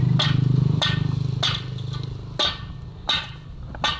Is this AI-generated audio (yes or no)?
no